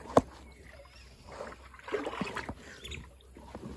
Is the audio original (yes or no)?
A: yes